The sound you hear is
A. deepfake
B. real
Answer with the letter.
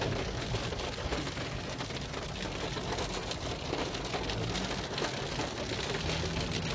B